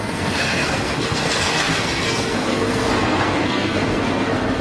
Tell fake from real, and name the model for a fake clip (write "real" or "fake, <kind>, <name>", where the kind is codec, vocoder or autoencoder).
fake, codec, SNAC